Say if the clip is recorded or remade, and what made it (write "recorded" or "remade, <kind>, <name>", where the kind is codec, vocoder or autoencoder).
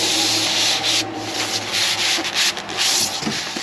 recorded